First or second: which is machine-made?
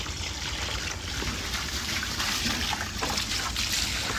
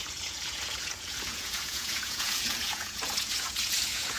second